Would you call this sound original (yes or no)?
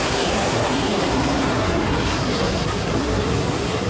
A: no